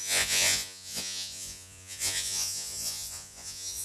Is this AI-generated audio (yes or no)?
yes